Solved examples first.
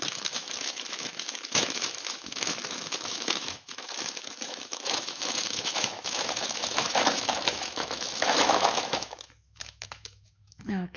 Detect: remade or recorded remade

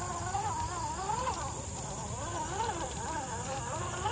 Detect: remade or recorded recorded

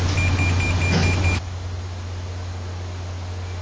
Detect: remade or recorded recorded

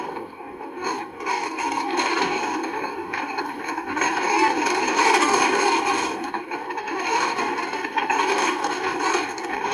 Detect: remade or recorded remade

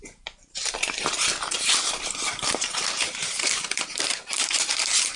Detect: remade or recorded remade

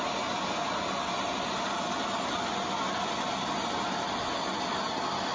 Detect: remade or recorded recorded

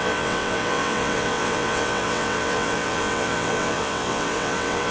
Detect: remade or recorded remade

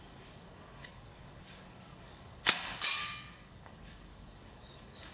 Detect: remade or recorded remade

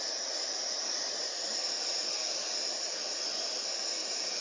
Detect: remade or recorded recorded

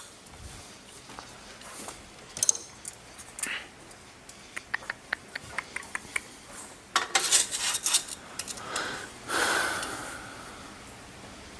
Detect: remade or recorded recorded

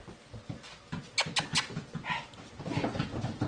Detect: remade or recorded recorded